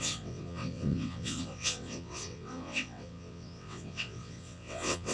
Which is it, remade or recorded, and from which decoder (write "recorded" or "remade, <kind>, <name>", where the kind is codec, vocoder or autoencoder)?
remade, vocoder, WaveNeXt